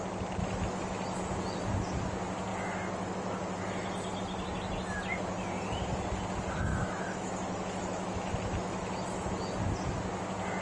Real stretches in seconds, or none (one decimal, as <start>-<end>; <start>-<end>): 0.0-0.4; 1.2-2.5; 3.9-6.7; 9.5-10.6